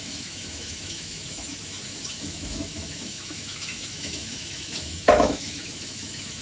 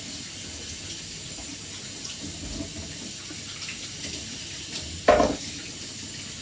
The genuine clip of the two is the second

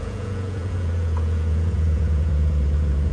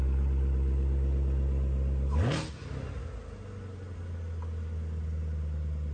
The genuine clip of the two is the second